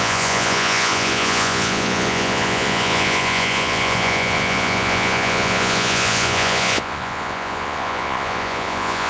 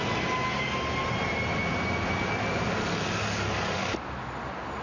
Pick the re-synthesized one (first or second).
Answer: first